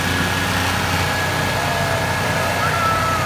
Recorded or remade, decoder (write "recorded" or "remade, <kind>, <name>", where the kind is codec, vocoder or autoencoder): recorded